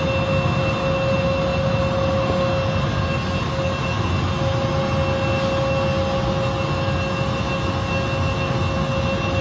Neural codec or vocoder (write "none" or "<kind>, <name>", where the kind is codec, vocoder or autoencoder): none